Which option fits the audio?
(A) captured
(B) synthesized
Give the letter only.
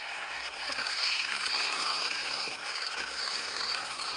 B